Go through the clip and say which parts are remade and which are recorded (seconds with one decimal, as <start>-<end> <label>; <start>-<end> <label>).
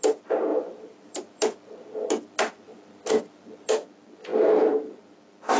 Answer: 0.0-5.6 recorded